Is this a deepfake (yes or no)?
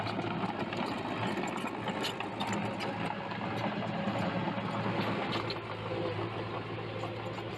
no